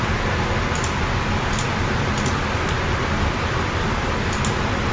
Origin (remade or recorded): recorded